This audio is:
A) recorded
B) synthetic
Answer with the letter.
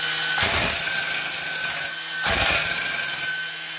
A